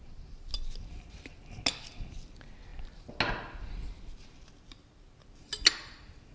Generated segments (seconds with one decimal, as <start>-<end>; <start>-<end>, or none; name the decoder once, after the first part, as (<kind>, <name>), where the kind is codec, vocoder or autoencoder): none